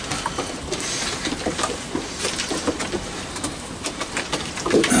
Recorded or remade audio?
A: recorded